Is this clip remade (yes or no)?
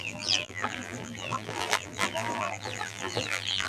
yes